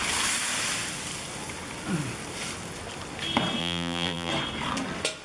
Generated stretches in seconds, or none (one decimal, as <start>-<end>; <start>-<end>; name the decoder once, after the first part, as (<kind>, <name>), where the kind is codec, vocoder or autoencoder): 3.6-4.3 (vocoder, BigVGAN v2)